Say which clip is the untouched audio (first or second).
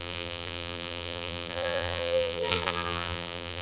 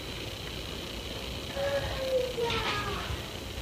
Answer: second